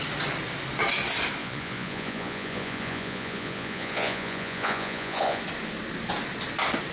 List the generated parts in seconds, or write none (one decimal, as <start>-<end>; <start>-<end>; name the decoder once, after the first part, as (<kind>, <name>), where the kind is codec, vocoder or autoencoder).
1.4-5.4 (vocoder, Vocos)